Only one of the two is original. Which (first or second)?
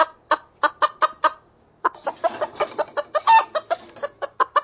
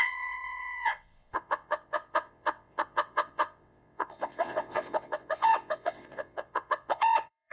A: first